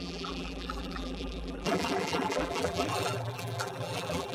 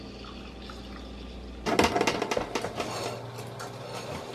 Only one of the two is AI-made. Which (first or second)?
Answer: first